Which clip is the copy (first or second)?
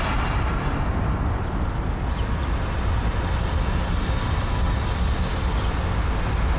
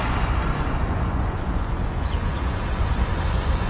second